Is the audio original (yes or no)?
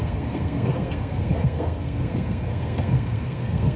no